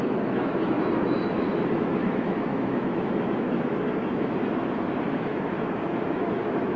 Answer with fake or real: fake